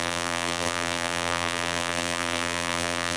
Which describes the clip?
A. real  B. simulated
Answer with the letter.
B